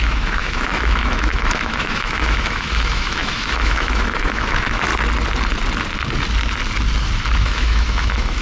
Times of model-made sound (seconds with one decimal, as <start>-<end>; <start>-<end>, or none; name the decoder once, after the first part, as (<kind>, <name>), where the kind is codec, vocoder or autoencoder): 0.0-4.9 (autoencoder, DAC-VAE); 7.4-8.4